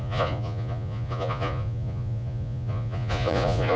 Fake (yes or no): yes